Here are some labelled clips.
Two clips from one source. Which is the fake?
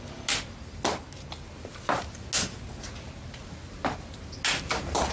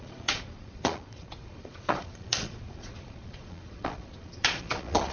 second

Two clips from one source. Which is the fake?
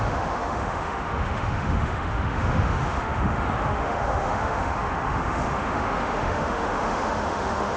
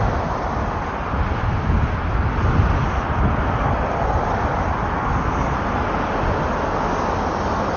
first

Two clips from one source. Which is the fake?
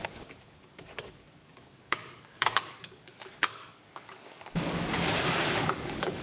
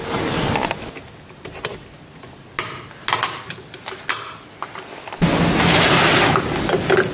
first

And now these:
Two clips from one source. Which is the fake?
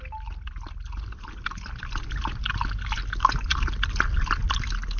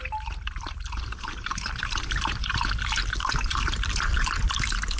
second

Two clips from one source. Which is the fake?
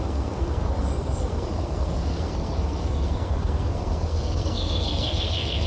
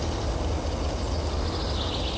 first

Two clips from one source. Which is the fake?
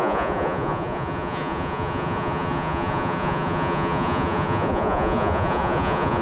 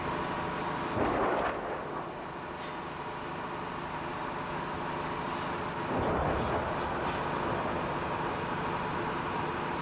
first